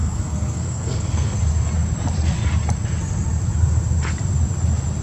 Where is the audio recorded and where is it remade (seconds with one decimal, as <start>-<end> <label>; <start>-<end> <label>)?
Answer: 0.0-1.4 remade; 1.4-5.0 recorded